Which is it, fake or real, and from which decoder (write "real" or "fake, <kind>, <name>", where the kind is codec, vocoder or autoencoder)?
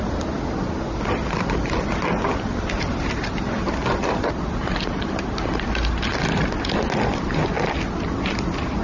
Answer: real